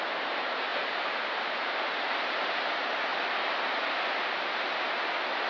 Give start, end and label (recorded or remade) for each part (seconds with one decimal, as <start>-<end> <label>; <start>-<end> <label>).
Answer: 0.0-3.1 remade; 3.1-5.5 recorded